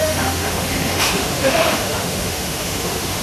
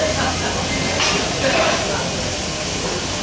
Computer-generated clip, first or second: first